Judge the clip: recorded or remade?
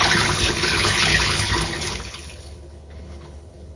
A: remade